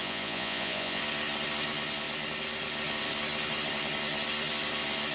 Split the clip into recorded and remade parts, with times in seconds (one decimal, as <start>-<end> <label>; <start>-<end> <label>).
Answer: 0.0-1.0 remade; 1.0-5.1 recorded